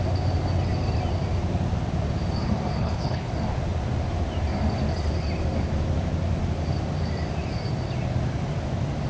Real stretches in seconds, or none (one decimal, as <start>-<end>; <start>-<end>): 0.0-2.8; 3.3-9.1